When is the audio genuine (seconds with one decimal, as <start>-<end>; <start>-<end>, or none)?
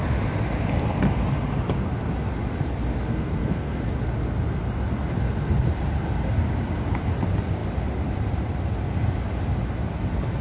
0.0-3.1; 3.8-10.4